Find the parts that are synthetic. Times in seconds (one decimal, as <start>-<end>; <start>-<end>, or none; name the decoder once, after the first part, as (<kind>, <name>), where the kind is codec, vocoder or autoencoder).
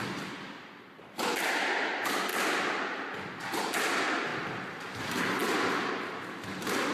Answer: 0.0-2.3 (vocoder, BigVGAN v2); 3.6-4.3; 5.0-6.9